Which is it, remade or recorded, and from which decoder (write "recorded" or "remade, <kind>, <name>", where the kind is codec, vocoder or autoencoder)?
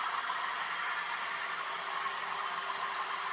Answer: recorded